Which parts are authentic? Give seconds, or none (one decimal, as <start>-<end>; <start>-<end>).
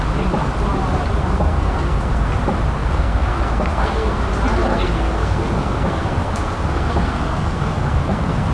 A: 0.0-1.2; 2.3-2.8; 4.2-4.7